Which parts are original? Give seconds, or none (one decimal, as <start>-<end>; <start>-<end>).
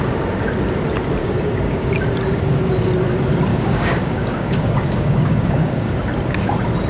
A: 0.0-1.2; 1.9-3.5; 5.9-6.9